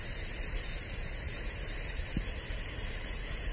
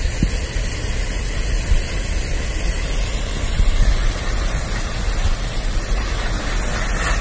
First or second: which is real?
second